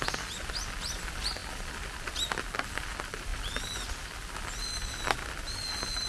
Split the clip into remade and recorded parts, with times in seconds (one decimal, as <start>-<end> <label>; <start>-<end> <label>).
0.0-6.1 recorded